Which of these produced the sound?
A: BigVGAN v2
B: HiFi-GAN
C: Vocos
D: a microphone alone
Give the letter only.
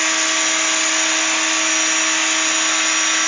D